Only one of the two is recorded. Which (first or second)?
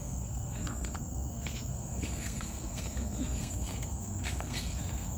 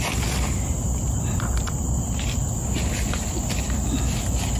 second